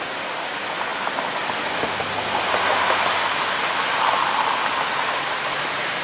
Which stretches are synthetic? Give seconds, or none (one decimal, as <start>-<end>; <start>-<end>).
none

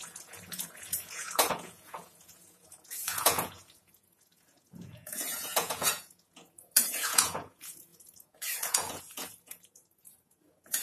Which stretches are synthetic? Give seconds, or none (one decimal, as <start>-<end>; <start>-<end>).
0.0-10.8